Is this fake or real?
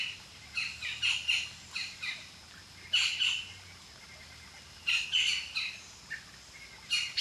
real